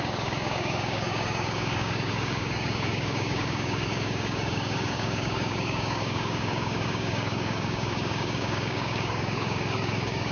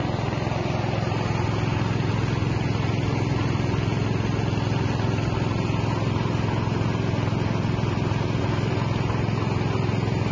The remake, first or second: first